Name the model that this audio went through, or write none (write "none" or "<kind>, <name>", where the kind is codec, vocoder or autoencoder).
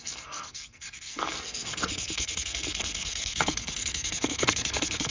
codec, SNAC